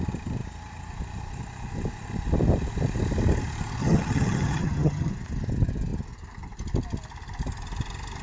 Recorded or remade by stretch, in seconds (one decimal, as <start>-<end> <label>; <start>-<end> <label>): 0.0-3.8 recorded; 3.8-5.1 remade; 5.1-8.2 recorded